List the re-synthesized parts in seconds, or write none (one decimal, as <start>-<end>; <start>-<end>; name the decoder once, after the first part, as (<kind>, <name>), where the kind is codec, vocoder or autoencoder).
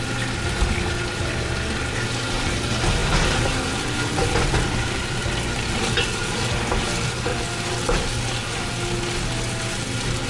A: 3.0-6.6 (vocoder, BigVGAN v2); 7.3-8.2